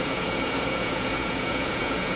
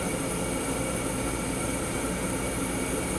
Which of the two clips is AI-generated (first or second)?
first